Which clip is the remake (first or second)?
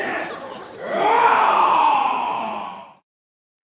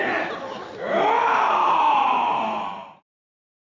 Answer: first